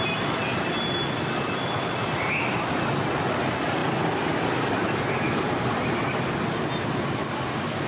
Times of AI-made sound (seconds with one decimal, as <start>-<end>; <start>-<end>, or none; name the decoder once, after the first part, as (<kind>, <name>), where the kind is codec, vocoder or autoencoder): none